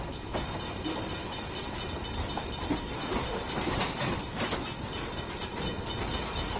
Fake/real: real